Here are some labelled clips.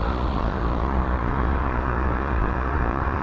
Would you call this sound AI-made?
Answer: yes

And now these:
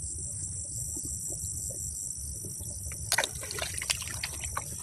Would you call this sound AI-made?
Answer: no